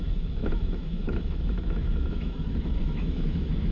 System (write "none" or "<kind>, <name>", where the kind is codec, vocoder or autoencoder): autoencoder, DAC-VAE